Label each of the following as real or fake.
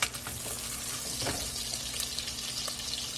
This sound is real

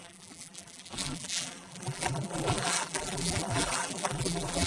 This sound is fake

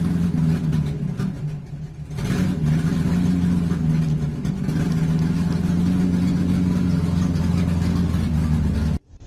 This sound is real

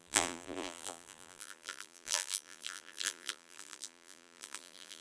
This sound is fake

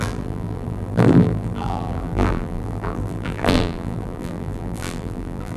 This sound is fake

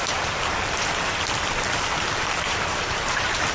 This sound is fake